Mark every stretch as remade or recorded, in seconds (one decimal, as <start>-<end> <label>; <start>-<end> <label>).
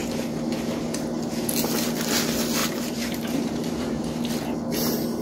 0.0-0.8 remade; 0.8-2.6 recorded; 2.6-4.0 remade; 4.0-5.2 recorded